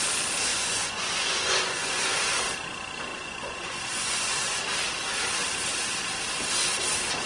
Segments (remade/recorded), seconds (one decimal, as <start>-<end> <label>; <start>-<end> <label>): 0.0-0.5 recorded; 0.5-2.4 remade; 2.4-3.1 recorded; 3.1-4.6 remade; 4.6-7.3 recorded